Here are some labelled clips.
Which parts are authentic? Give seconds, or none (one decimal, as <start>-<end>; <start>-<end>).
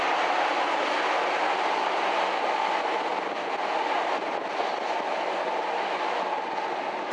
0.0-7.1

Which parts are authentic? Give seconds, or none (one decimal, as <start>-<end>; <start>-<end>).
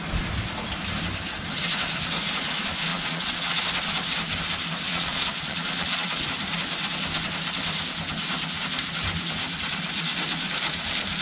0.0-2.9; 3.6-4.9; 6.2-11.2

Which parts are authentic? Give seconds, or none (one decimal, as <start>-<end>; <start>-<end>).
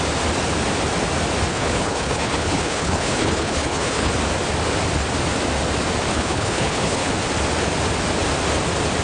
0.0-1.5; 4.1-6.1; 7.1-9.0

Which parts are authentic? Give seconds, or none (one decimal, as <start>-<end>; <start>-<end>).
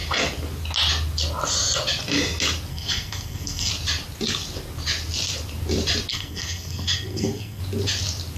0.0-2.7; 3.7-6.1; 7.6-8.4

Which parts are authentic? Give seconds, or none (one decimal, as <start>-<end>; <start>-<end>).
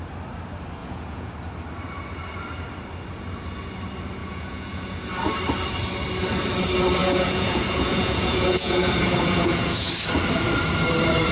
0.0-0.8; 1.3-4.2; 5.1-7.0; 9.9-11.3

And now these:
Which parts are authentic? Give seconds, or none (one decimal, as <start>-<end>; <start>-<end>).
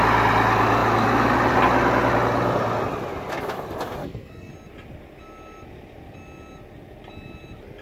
0.0-4.0; 4.5-7.8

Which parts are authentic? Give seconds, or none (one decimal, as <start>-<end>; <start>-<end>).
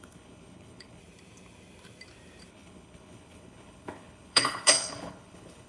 1.0-2.5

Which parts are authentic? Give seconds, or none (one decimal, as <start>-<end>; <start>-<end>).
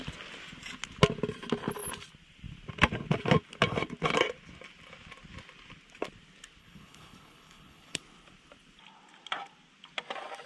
0.0-6.6; 8.0-10.5